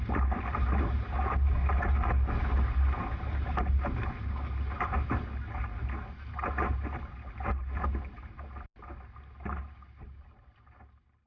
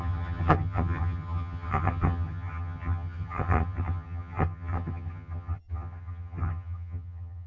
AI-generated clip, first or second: second